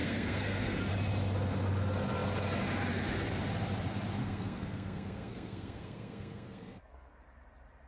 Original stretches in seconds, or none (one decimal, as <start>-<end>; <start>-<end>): 0.8-4.2; 7.1-7.9

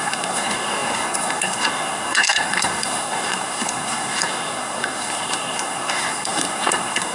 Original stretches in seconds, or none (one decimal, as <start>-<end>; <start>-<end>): none

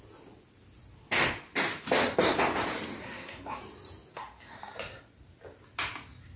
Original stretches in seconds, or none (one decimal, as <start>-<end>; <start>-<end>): 0.0-3.0; 3.6-4.1; 4.6-6.4

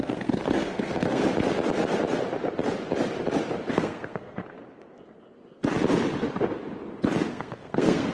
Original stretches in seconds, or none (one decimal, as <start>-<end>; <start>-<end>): 1.2-3.7; 4.4-7.3

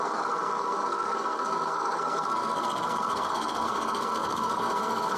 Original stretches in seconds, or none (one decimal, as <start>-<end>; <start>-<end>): none

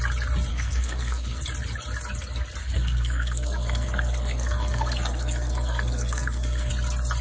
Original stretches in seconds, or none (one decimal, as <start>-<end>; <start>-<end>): 0.0-0.5; 1.4-2.6; 6.7-7.2